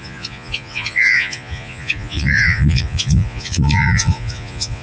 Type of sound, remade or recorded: remade